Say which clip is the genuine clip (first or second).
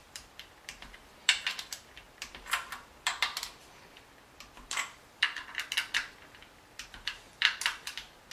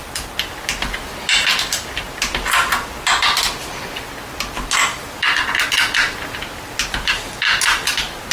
second